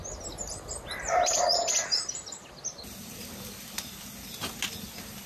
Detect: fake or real real